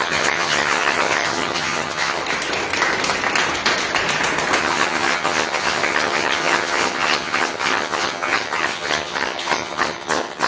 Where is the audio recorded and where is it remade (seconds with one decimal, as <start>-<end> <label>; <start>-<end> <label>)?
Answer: 0.0-2.2 remade; 2.2-4.6 recorded; 4.6-10.5 remade